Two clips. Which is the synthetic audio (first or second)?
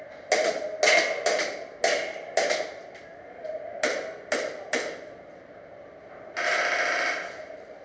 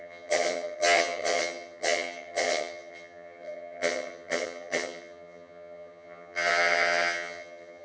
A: second